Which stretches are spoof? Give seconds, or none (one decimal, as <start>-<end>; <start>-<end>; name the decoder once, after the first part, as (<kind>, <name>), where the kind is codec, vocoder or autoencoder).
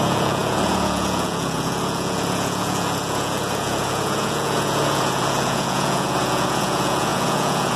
0.0-7.8 (vocoder, Vocos)